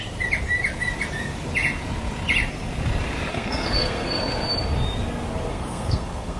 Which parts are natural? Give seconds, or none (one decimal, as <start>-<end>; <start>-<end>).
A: 0.0-3.3; 4.2-5.5